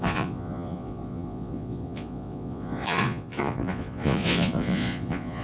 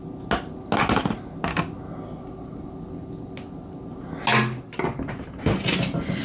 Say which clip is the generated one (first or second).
first